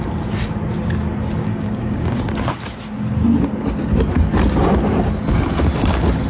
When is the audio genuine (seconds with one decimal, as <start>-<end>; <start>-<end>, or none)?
0.0-1.4; 2.2-6.3